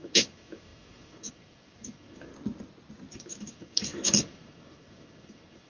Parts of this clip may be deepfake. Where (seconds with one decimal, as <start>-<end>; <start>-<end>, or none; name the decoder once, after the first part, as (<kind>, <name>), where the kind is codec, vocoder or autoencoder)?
0.0-2.3 (autoencoder, DAC-VAE); 3.1-5.7